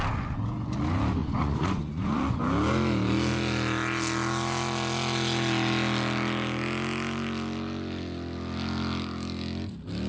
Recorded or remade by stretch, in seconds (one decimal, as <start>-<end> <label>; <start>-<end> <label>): 0.0-1.2 recorded; 1.2-2.4 remade; 2.4-10.1 recorded